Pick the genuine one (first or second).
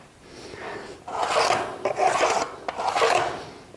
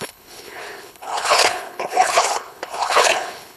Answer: first